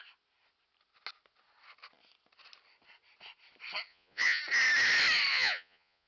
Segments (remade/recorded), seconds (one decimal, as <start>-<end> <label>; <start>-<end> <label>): 0.0-3.9 recorded; 3.9-4.4 remade; 4.4-5.3 recorded; 5.3-6.1 remade